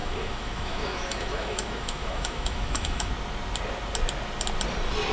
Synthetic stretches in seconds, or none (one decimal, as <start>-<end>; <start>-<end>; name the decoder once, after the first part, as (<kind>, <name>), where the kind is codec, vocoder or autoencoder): 0.0-3.1 (autoencoder, DAC-VAE)